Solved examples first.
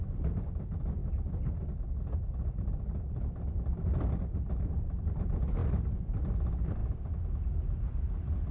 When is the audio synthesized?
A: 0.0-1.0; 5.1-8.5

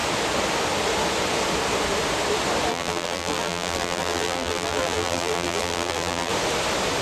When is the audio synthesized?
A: 2.7-6.3

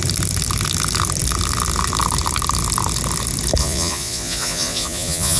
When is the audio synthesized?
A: 3.6-5.4

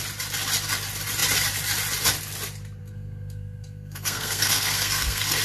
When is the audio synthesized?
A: 2.8-5.4

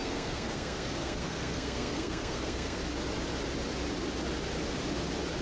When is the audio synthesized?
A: 0.0-2.8

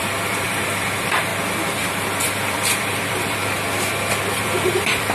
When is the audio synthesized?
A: 0.0-1.3; 2.2-3.4; 4.4-5.1

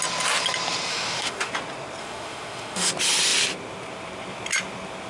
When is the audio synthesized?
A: 0.9-1.5; 2.0-2.9